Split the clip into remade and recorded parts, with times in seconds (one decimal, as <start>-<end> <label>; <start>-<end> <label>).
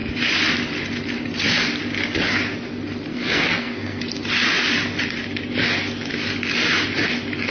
0.0-3.1 recorded; 3.1-4.0 remade; 4.0-7.5 recorded